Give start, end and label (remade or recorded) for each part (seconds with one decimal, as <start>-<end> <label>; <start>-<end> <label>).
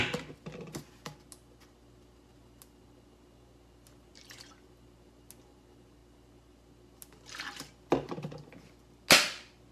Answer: 0.0-9.7 recorded